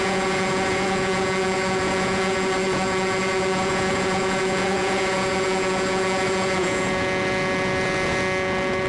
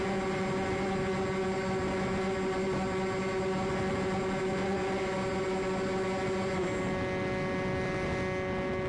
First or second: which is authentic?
second